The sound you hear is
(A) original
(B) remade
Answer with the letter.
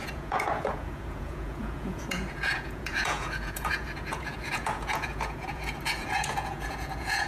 B